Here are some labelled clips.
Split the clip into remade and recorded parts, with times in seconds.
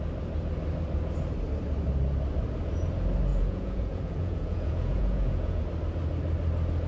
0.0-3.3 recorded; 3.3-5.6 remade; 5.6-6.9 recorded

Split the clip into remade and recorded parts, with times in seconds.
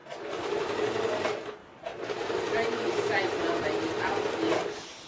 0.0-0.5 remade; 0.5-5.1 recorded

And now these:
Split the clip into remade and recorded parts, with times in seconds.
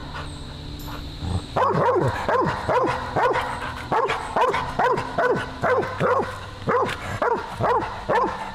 0.0-8.5 recorded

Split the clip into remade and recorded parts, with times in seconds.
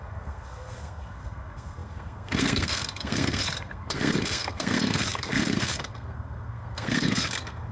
0.0-7.7 remade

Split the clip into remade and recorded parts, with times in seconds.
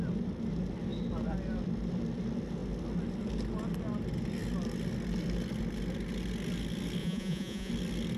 0.0-7.0 recorded; 7.0-7.7 remade; 7.7-8.2 recorded